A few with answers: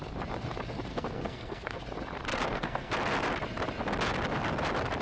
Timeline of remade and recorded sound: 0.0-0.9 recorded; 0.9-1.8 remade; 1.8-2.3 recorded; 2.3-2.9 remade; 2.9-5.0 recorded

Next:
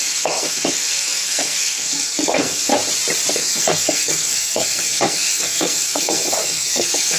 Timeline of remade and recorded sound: 0.0-2.7 remade; 2.7-3.3 recorded; 3.3-7.2 remade

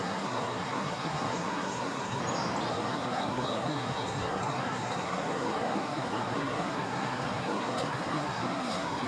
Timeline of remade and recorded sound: 0.0-2.2 remade; 2.2-2.7 recorded; 2.7-9.1 remade

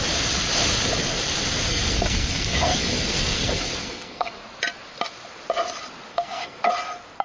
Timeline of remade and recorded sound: 0.0-1.7 recorded; 1.7-4.3 remade; 4.3-6.1 recorded; 6.1-6.7 remade; 6.7-7.2 recorded